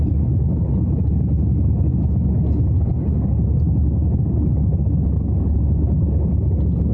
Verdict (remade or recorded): recorded